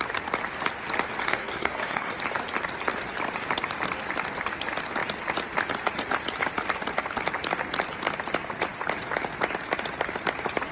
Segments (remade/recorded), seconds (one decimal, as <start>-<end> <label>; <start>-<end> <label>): 0.0-1.2 recorded; 1.2-2.1 remade; 2.1-10.7 recorded